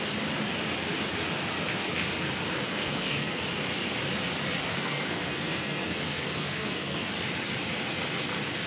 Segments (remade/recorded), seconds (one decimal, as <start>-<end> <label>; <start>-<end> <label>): 0.0-2.7 recorded; 2.7-3.4 remade; 3.4-4.7 recorded; 4.7-7.1 remade; 7.1-8.7 recorded